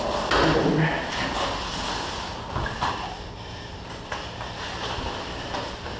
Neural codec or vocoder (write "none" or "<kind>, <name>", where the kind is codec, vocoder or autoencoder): none